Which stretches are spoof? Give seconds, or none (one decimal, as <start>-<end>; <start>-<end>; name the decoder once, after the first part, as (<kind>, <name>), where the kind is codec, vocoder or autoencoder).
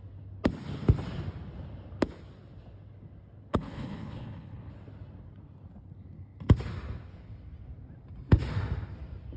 3.5-4.7 (codec, HILCodec)